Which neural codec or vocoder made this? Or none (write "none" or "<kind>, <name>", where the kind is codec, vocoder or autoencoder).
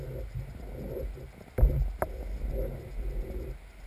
none